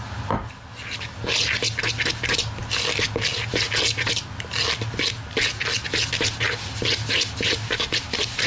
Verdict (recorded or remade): recorded